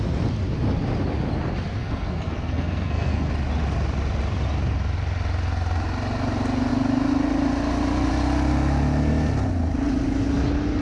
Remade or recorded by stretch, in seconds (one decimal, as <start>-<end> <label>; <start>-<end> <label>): 0.0-1.7 recorded; 1.7-3.3 remade; 3.3-10.8 recorded